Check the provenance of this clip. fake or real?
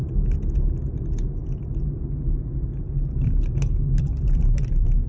real